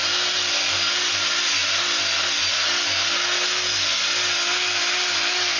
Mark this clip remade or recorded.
recorded